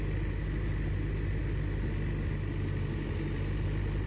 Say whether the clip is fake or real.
real